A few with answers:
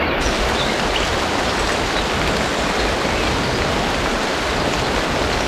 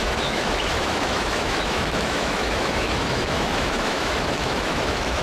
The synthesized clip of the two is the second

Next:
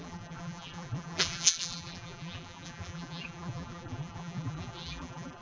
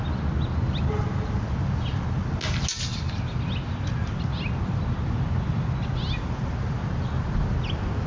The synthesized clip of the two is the first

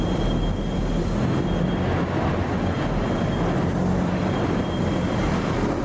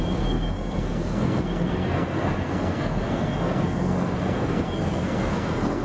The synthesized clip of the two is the second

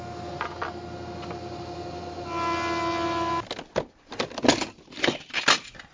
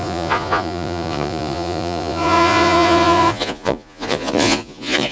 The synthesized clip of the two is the second